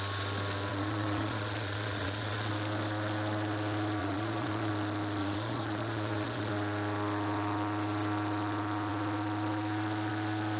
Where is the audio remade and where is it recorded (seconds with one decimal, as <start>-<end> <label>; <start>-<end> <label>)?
0.0-0.7 recorded; 0.7-2.5 remade; 2.5-4.0 recorded; 4.0-4.7 remade; 4.7-5.2 recorded; 5.2-6.5 remade; 6.5-10.6 recorded